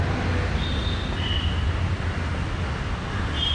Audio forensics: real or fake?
real